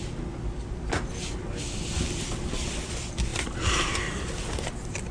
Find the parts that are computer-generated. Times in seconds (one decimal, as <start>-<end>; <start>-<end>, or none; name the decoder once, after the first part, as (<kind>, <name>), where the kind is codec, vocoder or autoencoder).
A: none